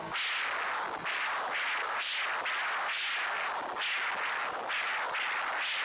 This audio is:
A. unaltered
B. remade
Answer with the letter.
A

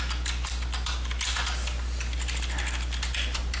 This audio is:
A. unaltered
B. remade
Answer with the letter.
A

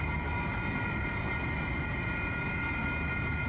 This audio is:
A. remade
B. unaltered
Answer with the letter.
B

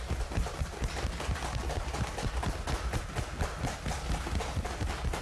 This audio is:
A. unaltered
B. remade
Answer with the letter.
A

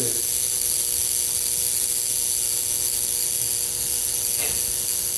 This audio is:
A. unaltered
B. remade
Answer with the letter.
A